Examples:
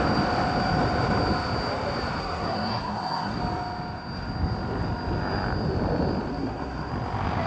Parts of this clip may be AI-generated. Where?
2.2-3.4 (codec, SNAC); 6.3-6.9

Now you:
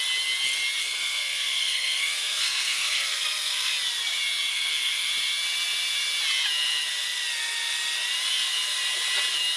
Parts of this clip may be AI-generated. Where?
0.8-3.7 (codec, SNAC); 4.5-5.1

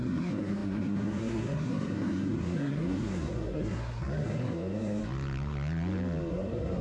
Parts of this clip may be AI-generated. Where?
0.0-5.0 (codec, SNAC); 6.3-6.8